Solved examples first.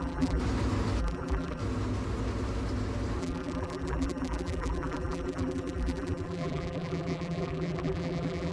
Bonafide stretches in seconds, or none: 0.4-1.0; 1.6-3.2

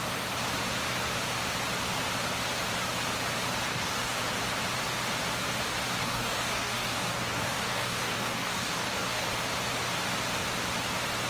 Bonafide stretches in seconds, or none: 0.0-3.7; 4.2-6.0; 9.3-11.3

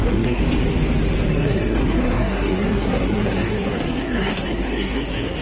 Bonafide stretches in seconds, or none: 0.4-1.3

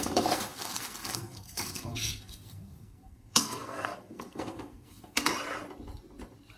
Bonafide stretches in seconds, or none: 5.3-6.6

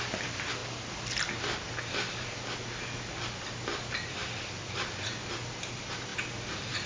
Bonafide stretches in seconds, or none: 0.0-6.9

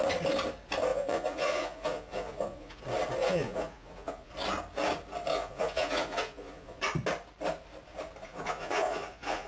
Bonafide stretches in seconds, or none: 0.0-0.9; 2.8-3.2; 4.3-5.3; 6.8-8.2

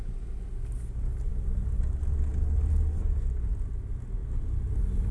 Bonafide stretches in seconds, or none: 0.0-5.1

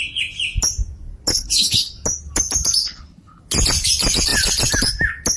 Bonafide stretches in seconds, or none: 0.0-1.3; 1.9-2.8; 3.4-5.4